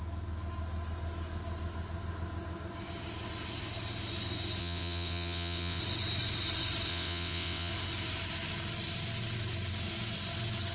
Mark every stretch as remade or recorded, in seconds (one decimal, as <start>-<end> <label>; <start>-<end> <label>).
0.0-4.6 recorded; 4.6-5.8 remade; 5.8-6.9 recorded; 6.9-7.7 remade; 7.7-10.7 recorded